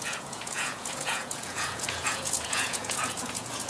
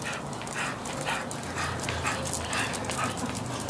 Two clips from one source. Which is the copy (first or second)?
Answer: first